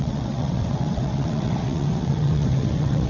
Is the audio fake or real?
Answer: fake